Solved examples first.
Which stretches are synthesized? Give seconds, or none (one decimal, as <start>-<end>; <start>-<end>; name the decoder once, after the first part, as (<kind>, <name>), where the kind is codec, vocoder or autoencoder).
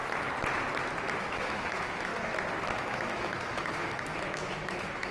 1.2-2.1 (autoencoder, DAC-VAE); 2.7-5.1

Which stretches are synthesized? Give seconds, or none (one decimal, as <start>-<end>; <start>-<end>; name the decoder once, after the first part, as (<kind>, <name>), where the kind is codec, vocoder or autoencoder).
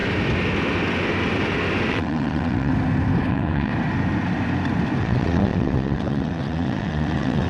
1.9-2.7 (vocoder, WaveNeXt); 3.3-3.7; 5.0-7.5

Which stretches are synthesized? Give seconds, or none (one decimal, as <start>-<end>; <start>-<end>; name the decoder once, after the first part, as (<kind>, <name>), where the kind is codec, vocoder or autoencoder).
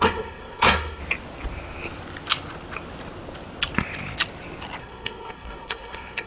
0.0-1.0 (codec, SNAC); 4.8-6.3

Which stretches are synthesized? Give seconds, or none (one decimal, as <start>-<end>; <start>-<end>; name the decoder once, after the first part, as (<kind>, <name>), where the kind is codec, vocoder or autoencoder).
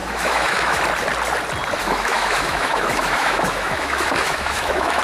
0.0-0.8 (autoencoder, DAC-VAE); 1.8-5.0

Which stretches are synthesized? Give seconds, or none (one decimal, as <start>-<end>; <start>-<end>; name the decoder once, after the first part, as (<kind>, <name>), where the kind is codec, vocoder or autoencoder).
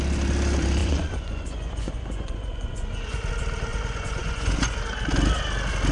0.8-3.3 (vocoder, Vocos); 3.7-4.8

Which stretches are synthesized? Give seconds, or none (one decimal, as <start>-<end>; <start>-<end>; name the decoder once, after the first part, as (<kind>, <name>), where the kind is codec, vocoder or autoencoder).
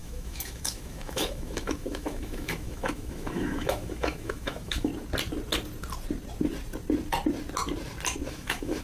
0.0-4.9 (autoencoder, DAC-VAE); 8.3-8.8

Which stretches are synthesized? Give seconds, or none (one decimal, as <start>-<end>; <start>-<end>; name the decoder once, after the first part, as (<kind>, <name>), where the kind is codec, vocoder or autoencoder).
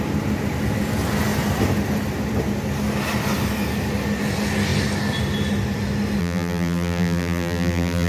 6.2-8.1 (vocoder, BigVGAN v2)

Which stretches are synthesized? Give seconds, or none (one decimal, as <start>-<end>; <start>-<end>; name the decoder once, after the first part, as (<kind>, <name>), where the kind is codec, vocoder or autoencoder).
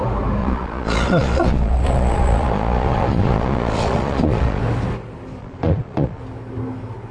0.4-4.6 (vocoder, Vocos); 5.4-6.2